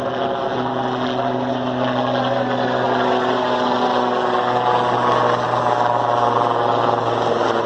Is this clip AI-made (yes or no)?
no